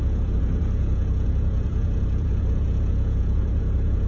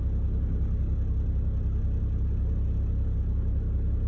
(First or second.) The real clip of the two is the second